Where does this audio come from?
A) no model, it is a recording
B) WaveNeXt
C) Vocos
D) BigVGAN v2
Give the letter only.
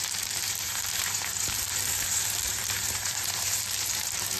D